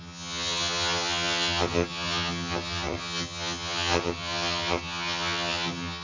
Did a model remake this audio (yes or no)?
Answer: yes